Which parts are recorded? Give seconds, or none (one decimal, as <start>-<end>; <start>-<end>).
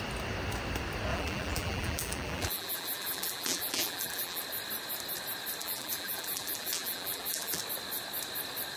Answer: 0.0-1.1; 4.4-5.6; 7.6-8.8